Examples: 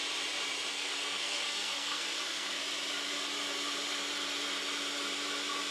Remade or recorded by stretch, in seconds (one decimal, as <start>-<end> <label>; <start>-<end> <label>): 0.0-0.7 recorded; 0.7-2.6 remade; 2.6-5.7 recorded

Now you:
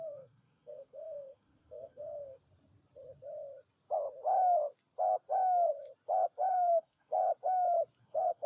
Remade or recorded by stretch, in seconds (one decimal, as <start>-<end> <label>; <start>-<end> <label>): 0.0-2.4 remade; 2.4-6.5 recorded; 6.5-7.2 remade; 7.2-8.0 recorded; 8.0-8.5 remade

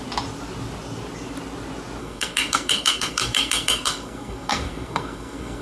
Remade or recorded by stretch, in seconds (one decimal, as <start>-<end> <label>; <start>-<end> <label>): 0.0-2.0 recorded; 2.0-5.6 remade